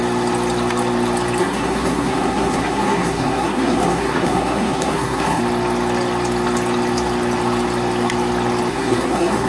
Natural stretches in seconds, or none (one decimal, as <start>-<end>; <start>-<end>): 0.0-1.4; 5.4-8.7